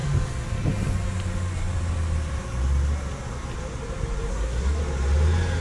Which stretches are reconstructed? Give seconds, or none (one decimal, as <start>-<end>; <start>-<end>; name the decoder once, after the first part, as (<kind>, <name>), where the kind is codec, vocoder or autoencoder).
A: 4.3-4.8 (codec, SNAC)